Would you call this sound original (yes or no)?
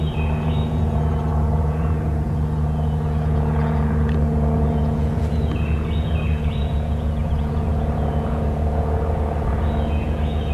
no